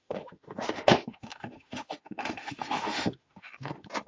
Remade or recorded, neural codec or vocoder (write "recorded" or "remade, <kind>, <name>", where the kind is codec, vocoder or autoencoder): remade, autoencoder, DAC-VAE